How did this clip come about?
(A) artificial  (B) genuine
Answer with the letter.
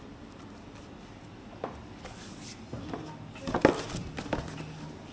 B